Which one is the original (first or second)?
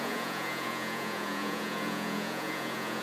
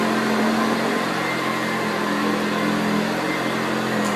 second